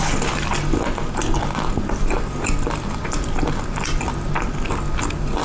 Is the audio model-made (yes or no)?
no